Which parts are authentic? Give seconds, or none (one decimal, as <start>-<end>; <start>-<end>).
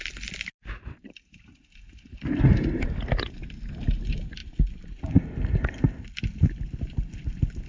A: 0.0-7.7